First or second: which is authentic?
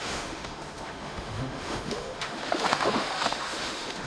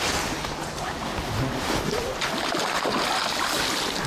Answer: second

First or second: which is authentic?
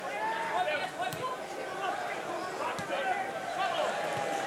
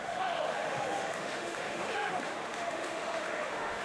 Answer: first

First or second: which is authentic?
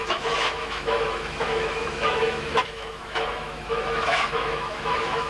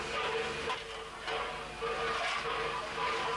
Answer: second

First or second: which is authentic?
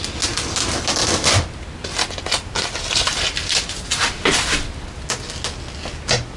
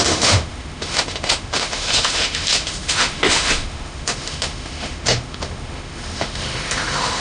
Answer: first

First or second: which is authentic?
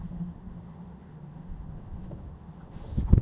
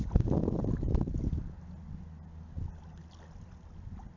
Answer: second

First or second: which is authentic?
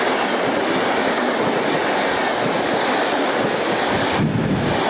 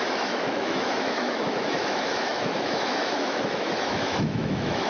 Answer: first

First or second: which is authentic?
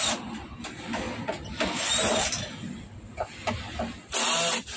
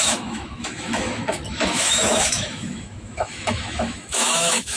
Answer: first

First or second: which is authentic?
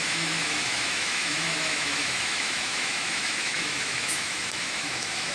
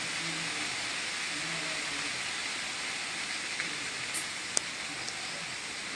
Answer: second